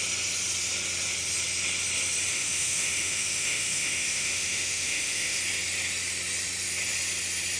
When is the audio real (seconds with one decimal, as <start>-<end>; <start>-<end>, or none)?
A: 0.0-2.3; 5.4-7.6

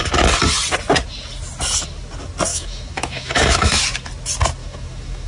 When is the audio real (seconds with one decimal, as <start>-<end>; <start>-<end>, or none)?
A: 0.0-2.5; 3.8-4.6

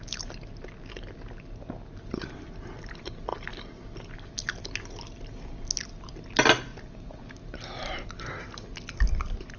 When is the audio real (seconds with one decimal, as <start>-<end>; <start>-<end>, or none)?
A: 0.0-9.6

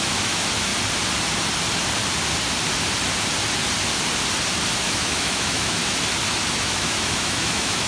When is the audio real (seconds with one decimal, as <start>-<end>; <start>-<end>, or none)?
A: 0.7-4.8; 5.8-6.5

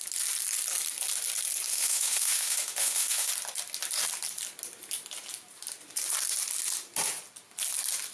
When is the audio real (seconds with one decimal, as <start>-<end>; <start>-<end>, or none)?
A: 0.0-1.7; 3.3-8.1